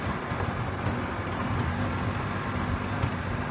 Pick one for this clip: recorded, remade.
recorded